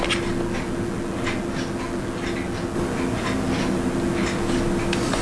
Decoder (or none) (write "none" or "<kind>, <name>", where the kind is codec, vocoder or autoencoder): none